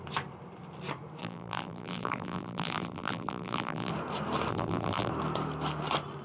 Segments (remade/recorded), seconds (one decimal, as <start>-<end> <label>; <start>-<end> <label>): 0.0-1.2 recorded; 1.2-3.9 remade; 3.9-4.5 recorded; 4.5-5.1 remade; 5.1-6.2 recorded